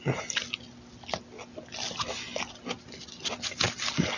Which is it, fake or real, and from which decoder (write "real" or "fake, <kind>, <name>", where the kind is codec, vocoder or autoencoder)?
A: real